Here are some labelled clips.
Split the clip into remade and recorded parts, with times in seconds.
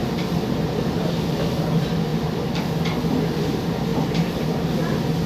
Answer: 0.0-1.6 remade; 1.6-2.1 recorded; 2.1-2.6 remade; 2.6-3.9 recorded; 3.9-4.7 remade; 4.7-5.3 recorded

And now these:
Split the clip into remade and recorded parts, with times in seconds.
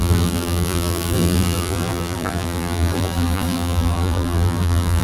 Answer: 0.0-5.0 remade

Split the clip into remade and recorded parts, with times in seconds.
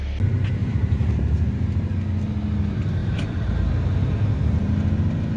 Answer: 0.0-0.6 recorded; 0.6-1.5 remade; 1.5-3.0 recorded; 3.0-3.7 remade; 3.7-5.4 recorded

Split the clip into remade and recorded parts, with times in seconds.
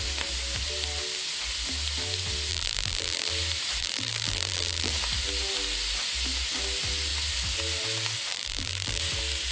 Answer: 0.0-2.5 recorded; 2.5-3.3 remade; 3.3-3.8 recorded; 3.8-4.9 remade; 4.9-8.3 recorded; 8.3-9.0 remade; 9.0-9.5 recorded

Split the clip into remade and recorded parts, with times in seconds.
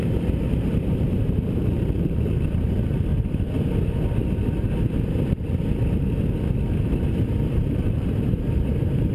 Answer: 0.0-3.1 remade; 3.1-7.5 recorded; 7.5-9.1 remade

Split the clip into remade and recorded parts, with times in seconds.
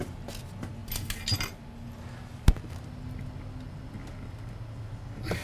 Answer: 0.0-5.4 recorded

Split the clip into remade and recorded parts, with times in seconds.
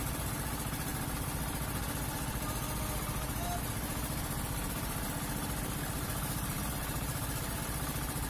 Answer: 0.0-8.3 recorded